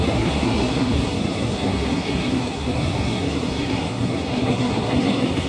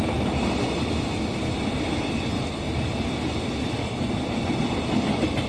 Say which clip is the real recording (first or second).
second